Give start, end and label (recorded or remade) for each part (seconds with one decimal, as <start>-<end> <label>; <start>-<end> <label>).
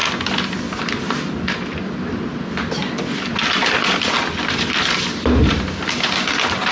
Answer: 0.0-6.7 recorded